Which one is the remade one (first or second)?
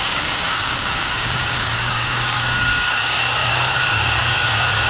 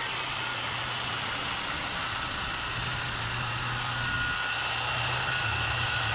first